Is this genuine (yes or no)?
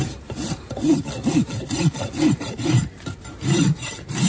no